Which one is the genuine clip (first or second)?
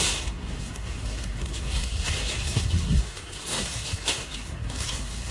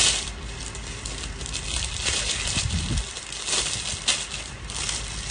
second